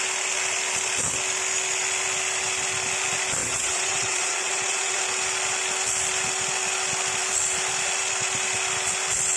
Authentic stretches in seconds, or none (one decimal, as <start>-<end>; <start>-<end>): 0.0-3.4; 5.0-9.4